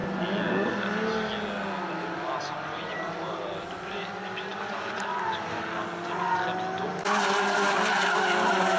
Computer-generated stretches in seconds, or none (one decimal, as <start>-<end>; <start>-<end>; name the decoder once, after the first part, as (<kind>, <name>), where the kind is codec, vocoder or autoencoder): 2.4-4.5 (vocoder, BigVGAN v2); 7.2-8.8